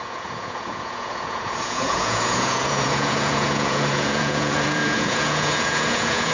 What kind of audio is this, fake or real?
fake